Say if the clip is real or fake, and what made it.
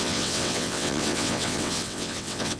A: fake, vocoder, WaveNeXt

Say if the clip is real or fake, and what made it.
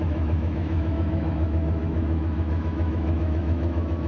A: fake, autoencoder, DAC-VAE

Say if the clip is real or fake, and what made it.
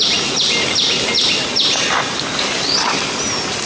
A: real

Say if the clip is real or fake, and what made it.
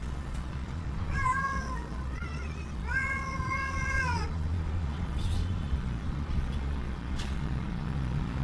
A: fake, vocoder, Vocos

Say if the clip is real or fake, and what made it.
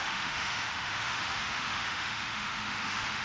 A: fake, autoencoder, DAC-VAE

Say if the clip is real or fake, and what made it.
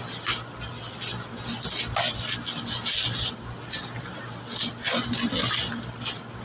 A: real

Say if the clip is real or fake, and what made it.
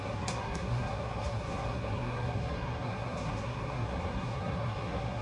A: fake, codec, SNAC